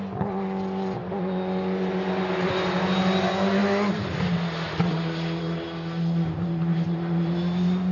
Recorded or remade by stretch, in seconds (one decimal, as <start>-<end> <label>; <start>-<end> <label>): 0.0-7.9 recorded